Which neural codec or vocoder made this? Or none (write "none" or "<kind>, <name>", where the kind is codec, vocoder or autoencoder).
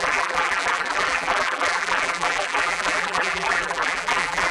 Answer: vocoder, BigVGAN v2